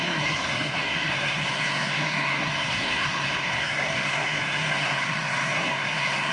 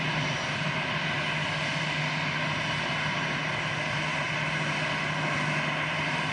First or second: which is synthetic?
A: first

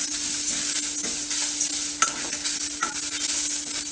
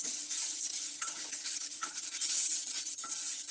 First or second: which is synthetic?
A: second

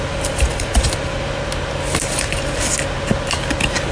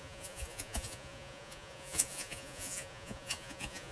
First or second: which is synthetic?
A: second